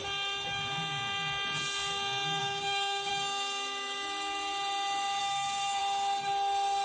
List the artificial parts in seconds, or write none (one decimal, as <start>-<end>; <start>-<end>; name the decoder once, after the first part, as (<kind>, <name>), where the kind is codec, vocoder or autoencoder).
2.4-3.1 (codec, DAC); 5.2-5.8